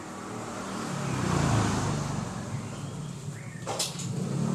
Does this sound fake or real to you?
real